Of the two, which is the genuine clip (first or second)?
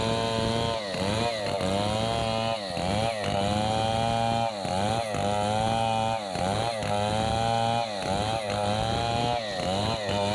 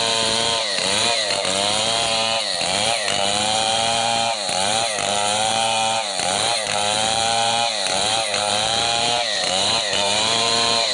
first